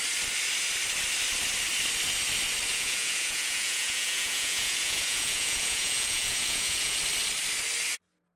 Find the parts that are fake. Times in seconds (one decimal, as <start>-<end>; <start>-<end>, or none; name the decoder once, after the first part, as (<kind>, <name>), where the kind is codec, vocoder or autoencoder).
2.7-7.0 (vocoder, Vocos)